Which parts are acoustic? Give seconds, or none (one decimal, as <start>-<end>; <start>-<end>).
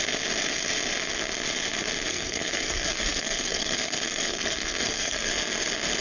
0.0-2.1; 5.3-6.0